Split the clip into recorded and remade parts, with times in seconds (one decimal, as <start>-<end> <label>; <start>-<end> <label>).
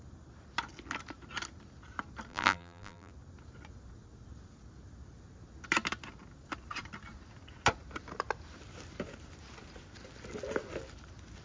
0.0-2.3 recorded; 2.3-3.1 remade; 3.1-11.4 recorded